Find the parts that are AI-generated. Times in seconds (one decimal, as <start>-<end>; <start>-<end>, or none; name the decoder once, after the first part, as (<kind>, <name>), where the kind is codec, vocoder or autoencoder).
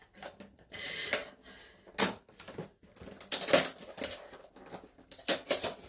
none